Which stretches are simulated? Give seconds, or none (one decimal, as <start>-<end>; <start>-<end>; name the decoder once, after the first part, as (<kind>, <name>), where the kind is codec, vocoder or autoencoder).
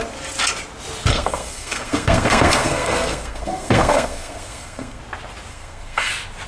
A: 1.1-5.0 (codec, SNAC); 5.5-6.1